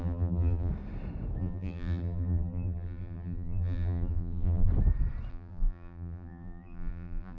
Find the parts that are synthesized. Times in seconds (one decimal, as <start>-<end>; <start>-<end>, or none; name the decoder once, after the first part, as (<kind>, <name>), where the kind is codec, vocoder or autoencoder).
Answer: 0.0-0.7 (vocoder, BigVGAN v2); 1.4-4.7; 5.3-7.4